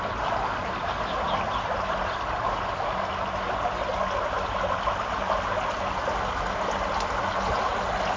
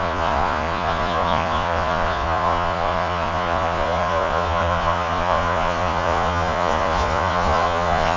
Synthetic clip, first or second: second